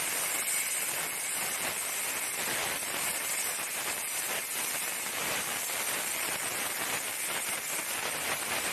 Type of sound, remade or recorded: recorded